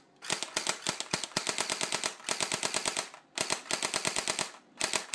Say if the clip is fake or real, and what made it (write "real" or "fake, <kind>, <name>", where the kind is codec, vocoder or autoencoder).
real